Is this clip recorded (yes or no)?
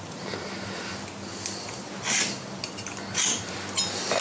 yes